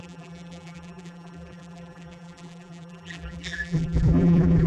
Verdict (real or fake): fake